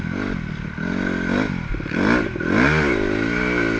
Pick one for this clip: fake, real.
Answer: real